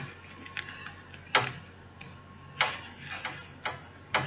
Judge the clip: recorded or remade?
recorded